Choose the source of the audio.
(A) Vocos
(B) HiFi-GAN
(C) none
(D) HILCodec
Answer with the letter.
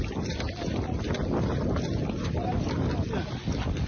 C